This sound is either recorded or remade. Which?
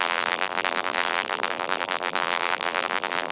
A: remade